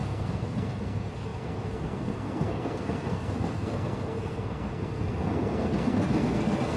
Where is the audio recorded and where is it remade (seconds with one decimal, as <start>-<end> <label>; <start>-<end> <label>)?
0.0-6.8 remade